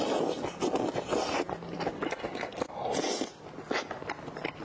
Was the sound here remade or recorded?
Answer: recorded